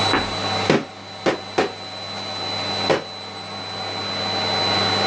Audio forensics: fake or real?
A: real